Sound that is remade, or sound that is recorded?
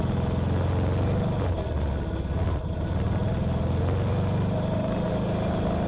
recorded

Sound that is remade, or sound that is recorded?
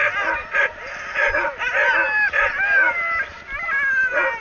recorded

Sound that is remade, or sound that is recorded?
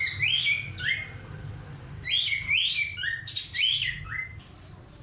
recorded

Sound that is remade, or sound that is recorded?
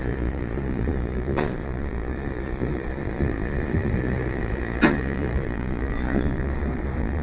remade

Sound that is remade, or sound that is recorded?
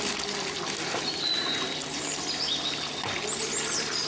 recorded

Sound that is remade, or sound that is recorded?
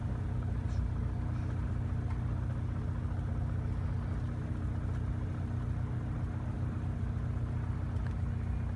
recorded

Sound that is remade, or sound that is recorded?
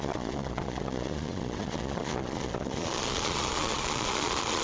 remade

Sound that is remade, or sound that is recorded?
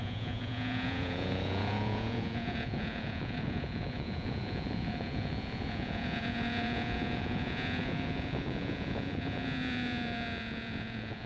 remade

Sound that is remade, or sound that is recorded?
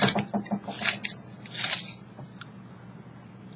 recorded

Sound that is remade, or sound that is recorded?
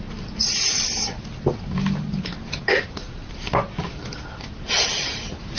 recorded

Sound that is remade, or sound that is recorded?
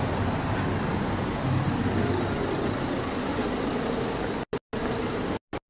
recorded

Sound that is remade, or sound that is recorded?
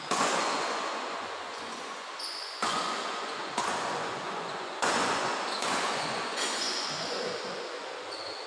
remade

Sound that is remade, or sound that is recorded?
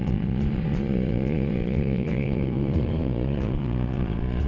remade